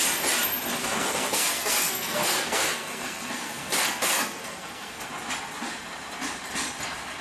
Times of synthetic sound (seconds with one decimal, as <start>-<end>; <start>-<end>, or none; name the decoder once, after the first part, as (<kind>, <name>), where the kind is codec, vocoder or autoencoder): 0.8-5.1 (codec, SNAC)